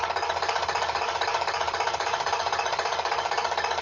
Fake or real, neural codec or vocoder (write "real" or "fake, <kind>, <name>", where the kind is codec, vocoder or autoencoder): fake, codec, DAC